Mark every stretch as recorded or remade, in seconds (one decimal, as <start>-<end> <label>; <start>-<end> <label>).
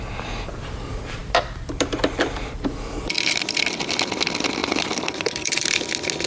0.0-1.2 recorded; 1.2-3.6 remade; 3.6-4.6 recorded; 4.6-5.6 remade; 5.6-6.3 recorded